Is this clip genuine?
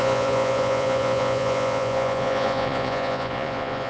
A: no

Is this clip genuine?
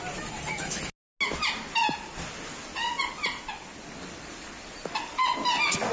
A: yes